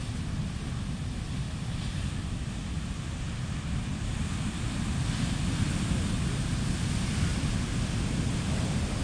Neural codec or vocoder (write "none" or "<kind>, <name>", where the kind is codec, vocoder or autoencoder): none